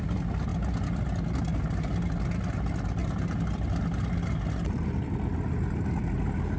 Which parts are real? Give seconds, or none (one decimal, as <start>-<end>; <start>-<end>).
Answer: 0.0-6.6